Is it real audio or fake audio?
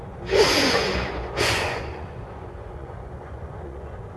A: fake